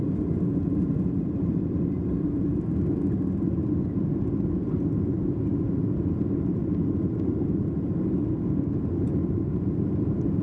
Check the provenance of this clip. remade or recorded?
recorded